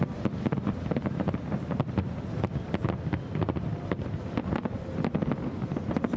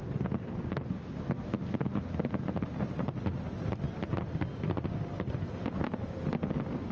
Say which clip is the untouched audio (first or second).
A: second